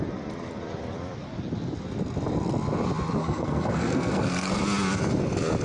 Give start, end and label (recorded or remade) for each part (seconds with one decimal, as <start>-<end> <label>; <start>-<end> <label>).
0.0-3.2 recorded; 3.2-4.6 remade; 4.6-5.6 recorded